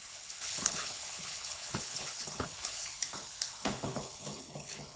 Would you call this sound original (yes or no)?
no